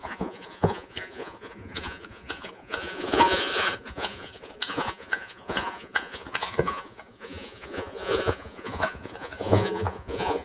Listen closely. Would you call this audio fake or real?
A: fake